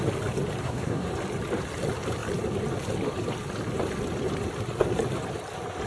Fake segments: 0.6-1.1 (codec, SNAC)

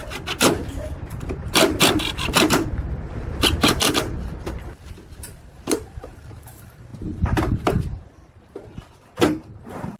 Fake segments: 5.2-10.0 (vocoder, BigVGAN v2)

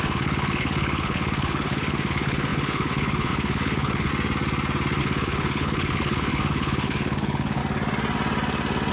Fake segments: 0.0-4.1 (codec, HILCodec); 5.0-7.6

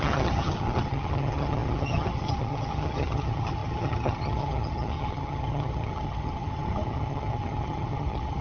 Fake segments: 0.0-8.4 (vocoder, HiFi-GAN)

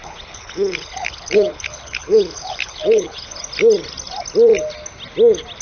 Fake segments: 0.0-3.4 (codec, HILCodec)

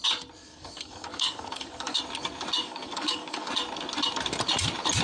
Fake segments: 0.4-2.0 (codec, DAC); 2.6-3.5

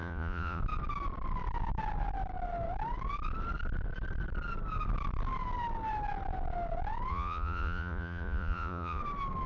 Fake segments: 0.0-0.6 (vocoder, Vocos); 7.1-9.0